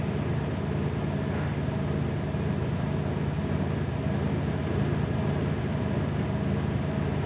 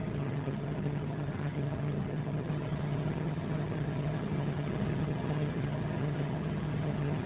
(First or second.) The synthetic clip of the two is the second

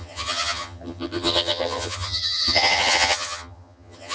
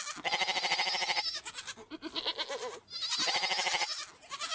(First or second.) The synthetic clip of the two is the first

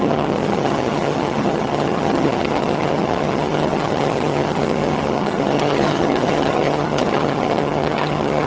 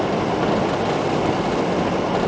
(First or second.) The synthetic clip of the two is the first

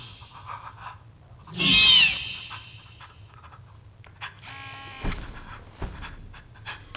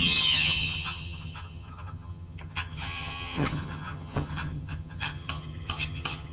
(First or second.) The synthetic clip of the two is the second